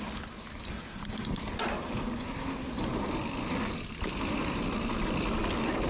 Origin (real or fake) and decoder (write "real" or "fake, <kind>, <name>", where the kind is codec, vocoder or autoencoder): real